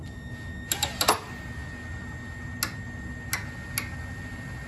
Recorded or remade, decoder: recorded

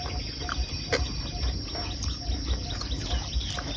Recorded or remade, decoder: recorded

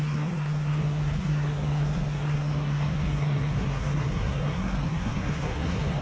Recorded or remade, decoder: remade, codec, SNAC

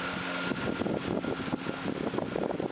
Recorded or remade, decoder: recorded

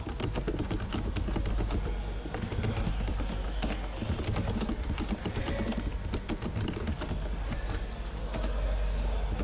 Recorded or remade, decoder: recorded